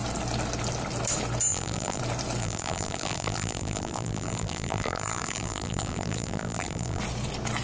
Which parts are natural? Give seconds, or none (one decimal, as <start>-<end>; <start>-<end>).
0.0-1.5; 2.0-2.4; 7.0-7.6